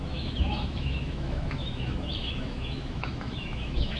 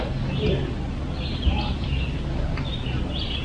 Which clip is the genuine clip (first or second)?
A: second